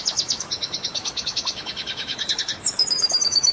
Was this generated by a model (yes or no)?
yes